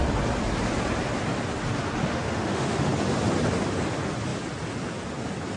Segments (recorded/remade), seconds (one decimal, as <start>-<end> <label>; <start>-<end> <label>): 0.0-2.1 recorded; 2.1-2.8 remade; 2.8-5.6 recorded